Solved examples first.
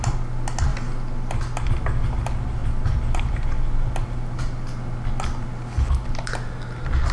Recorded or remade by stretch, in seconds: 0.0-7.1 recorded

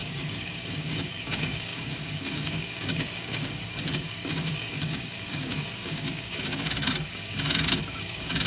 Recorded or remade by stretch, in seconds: 0.0-8.5 remade

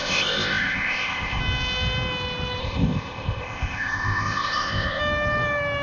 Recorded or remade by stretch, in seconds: 0.0-1.4 remade; 1.4-2.6 recorded; 2.6-5.0 remade; 5.0-5.8 recorded

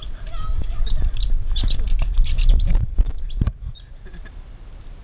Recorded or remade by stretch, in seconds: 0.0-0.6 recorded; 0.6-5.0 remade

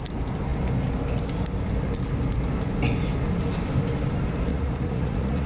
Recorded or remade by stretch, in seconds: 0.0-4.5 recorded; 4.5-5.5 remade